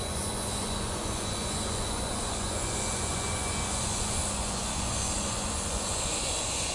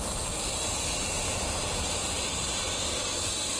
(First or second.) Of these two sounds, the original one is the second